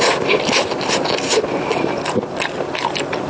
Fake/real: real